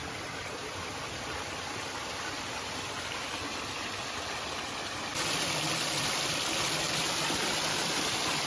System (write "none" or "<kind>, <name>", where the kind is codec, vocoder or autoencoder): none